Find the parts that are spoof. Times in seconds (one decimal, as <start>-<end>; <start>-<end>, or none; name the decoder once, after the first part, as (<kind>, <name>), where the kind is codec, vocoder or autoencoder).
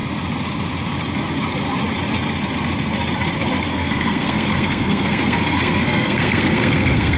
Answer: 3.7-7.2 (codec, SNAC)